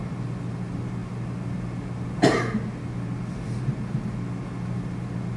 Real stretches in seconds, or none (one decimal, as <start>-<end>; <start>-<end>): 0.0-5.4